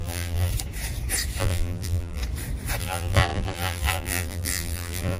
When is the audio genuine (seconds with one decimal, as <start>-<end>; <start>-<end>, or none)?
0.5-1.4; 2.2-2.8